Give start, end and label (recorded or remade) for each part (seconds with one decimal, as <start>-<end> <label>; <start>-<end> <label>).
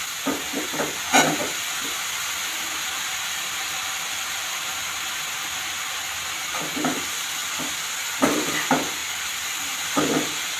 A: 0.0-1.4 recorded; 1.4-5.2 remade; 5.2-7.4 recorded; 7.4-7.9 remade; 7.9-9.0 recorded; 9.0-9.6 remade; 9.6-10.6 recorded